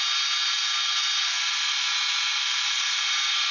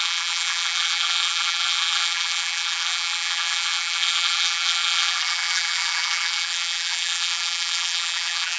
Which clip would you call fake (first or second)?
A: second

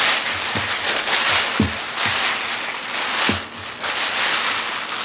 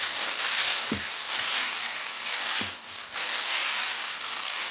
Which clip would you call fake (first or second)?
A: second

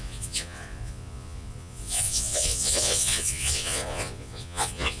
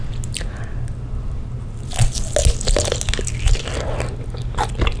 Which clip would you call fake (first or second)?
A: first